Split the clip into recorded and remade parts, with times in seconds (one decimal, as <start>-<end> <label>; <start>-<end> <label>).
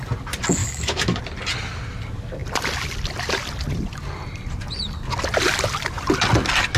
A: 0.0-0.6 recorded; 0.6-1.2 remade; 1.2-6.8 recorded